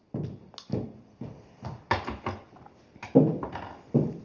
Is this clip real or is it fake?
real